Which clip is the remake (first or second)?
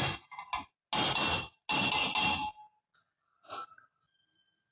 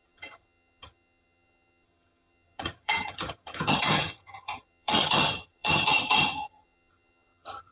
second